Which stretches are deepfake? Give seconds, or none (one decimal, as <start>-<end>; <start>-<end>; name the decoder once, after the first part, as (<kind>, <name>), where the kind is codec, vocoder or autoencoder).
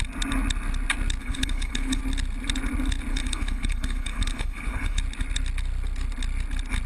1.2-2.0 (codec, HILCodec); 3.1-5.0